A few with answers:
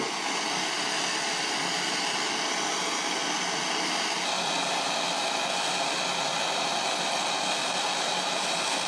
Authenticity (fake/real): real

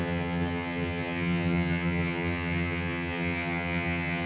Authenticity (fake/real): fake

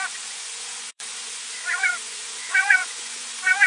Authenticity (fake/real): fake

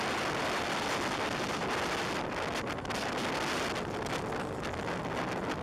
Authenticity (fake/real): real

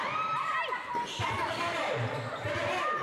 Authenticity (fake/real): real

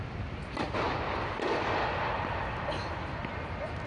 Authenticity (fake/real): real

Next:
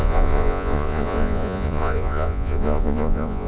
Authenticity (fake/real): fake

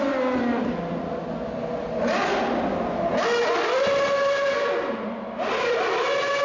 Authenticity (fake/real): real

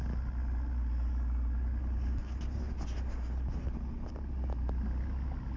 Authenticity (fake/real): real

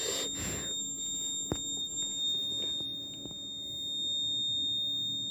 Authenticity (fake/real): real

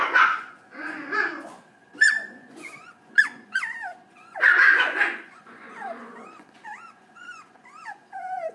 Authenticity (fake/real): fake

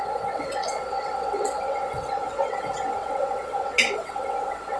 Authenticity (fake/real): fake